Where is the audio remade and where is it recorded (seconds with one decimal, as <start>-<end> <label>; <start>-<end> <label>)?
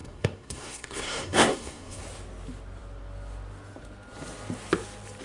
0.0-2.0 remade; 2.0-5.2 recorded